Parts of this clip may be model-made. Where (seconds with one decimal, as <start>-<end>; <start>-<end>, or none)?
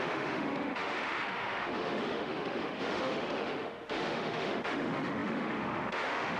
0.0-6.4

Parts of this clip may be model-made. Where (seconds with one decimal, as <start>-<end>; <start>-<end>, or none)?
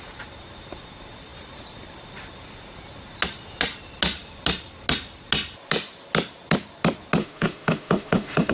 7.2-8.5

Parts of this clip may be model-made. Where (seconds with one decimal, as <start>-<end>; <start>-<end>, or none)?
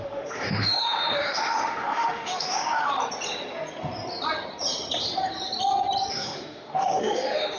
0.0-2.9; 6.1-7.6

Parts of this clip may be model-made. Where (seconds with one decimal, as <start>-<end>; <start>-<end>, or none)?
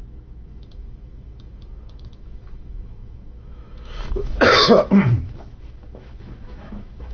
0.0-7.1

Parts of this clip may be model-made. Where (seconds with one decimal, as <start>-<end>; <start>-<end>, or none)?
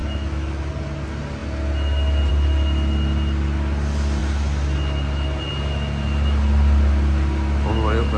0.0-0.7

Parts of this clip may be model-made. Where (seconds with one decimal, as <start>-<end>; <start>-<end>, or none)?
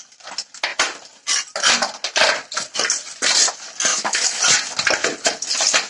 3.9-4.4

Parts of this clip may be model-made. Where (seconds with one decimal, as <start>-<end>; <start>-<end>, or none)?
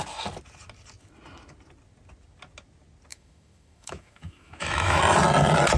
3.1-5.0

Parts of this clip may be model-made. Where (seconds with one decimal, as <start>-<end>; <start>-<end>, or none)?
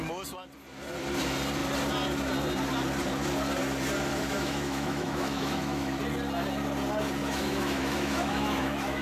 4.1-6.0; 7.2-9.0